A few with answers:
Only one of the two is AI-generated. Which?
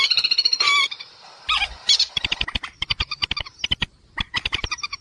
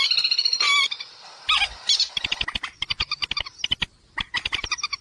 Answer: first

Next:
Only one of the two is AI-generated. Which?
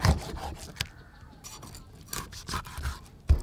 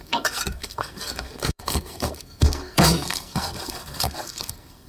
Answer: second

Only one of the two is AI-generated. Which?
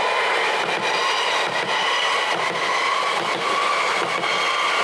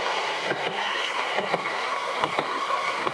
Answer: second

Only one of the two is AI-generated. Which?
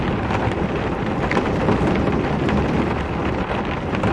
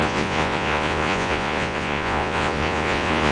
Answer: second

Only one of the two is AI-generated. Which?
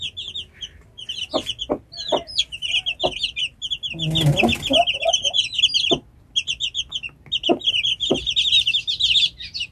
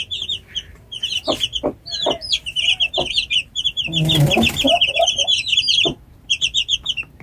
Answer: second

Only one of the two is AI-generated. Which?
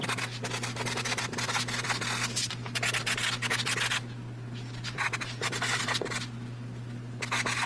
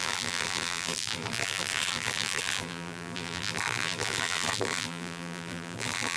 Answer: second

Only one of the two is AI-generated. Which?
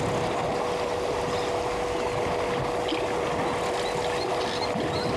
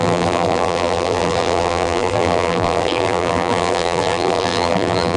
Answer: second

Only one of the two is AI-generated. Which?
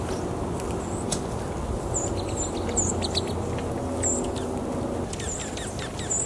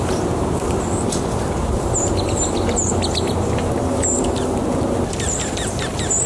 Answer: second